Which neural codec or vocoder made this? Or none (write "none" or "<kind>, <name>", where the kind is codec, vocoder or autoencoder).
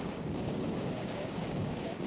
codec, DAC